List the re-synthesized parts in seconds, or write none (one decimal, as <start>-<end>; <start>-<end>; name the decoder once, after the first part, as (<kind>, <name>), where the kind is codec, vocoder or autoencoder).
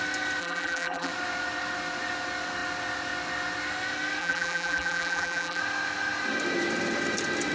0.4-1.1 (vocoder, BigVGAN v2); 4.2-5.6